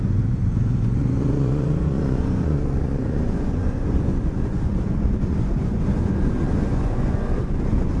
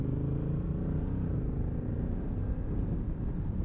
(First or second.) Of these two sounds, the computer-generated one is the first